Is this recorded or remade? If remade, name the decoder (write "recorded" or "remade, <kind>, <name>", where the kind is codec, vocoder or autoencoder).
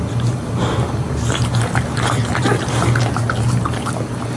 recorded